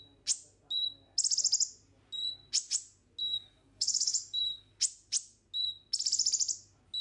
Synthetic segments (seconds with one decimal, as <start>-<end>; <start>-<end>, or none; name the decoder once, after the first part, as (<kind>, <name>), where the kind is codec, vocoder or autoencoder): 3.2-4.7 (codec, DAC)